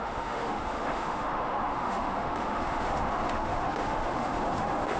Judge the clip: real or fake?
fake